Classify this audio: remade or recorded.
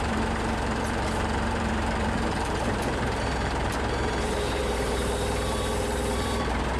remade